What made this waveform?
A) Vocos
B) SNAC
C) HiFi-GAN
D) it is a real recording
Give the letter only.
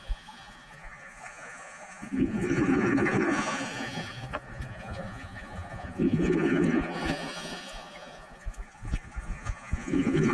A